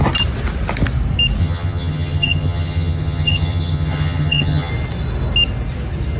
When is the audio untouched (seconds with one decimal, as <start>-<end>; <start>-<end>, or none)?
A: 0.0-1.4; 4.7-6.2